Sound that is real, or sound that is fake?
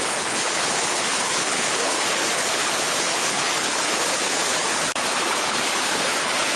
fake